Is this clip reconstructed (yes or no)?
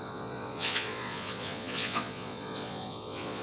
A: yes